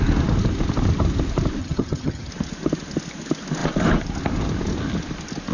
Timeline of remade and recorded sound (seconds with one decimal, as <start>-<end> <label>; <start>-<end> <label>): 0.0-1.6 recorded; 1.6-2.3 remade; 2.3-5.5 recorded